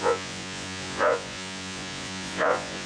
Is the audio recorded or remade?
remade